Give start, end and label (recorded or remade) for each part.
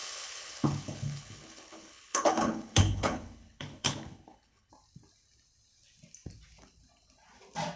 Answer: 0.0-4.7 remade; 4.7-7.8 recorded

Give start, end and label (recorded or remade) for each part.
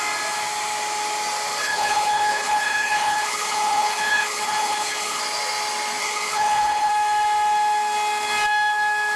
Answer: 0.0-1.6 recorded; 1.6-5.2 remade; 5.2-6.0 recorded; 6.0-6.9 remade; 6.9-9.2 recorded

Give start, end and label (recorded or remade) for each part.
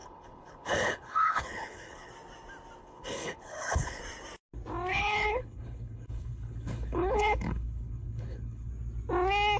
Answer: 0.0-2.1 remade; 2.1-2.8 recorded; 2.8-4.0 remade; 4.0-4.9 recorded; 4.9-8.7 remade; 8.7-9.6 recorded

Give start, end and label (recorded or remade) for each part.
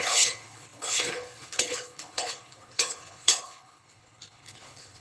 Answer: 0.0-5.0 remade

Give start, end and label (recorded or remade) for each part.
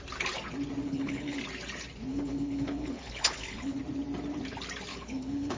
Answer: 0.0-0.8 recorded; 0.8-1.4 remade; 1.4-2.1 recorded; 2.1-3.8 remade; 3.8-4.9 recorded; 4.9-5.6 remade